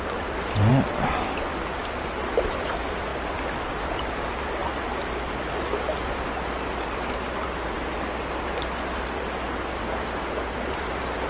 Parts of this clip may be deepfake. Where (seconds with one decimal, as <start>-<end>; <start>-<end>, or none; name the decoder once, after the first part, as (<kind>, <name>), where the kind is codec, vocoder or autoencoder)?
none